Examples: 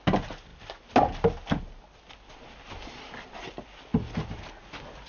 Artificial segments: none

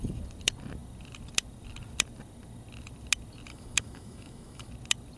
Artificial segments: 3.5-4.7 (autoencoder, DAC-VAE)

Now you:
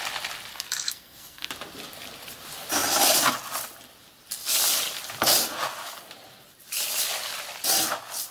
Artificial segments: 0.5-1.5 (codec, SNAC)